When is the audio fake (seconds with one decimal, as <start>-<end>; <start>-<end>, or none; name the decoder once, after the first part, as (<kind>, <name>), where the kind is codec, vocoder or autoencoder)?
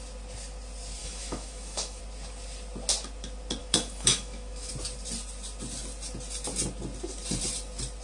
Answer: 1.0-2.0 (autoencoder, DAC-VAE); 3.6-4.7